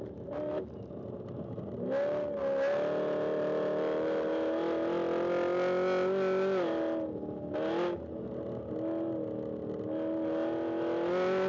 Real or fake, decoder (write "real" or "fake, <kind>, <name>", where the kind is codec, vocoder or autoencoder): real